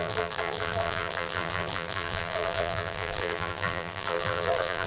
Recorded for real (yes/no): no